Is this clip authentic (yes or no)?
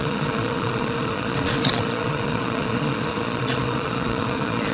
no